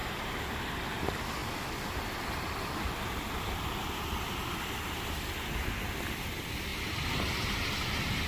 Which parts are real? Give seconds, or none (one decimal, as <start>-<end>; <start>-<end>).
0.5-6.7; 7.7-8.3